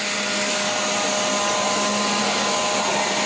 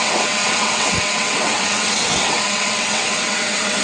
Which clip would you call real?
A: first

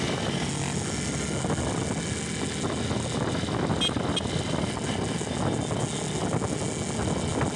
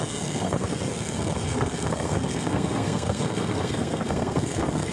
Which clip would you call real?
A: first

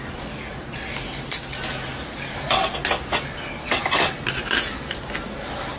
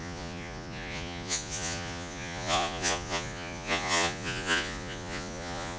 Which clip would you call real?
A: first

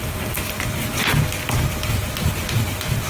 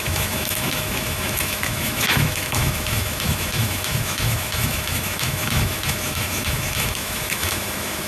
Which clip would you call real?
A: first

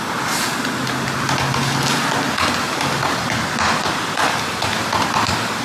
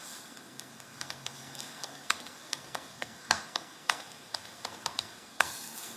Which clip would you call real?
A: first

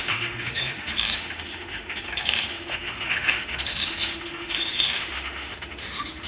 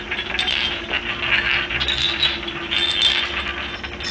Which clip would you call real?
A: second